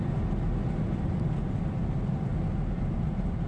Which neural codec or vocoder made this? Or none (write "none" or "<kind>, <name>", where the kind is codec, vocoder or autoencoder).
none